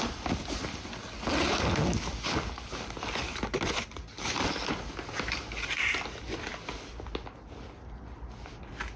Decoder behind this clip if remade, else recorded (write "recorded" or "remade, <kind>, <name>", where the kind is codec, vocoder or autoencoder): recorded